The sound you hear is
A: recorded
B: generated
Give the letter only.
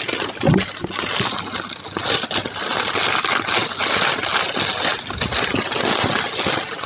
A